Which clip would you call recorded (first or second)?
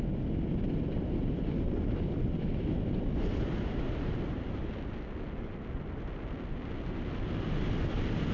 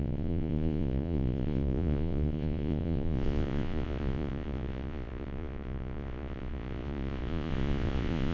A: first